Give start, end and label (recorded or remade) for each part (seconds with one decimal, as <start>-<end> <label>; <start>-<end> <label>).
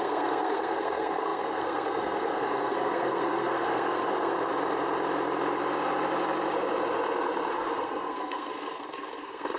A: 0.0-4.5 remade; 4.5-7.5 recorded; 7.5-9.6 remade